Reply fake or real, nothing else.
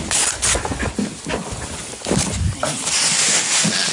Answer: real